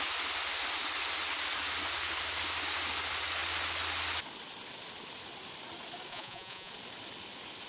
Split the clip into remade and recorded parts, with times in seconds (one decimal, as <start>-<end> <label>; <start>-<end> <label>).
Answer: 0.0-6.1 recorded; 6.1-6.7 remade; 6.7-7.7 recorded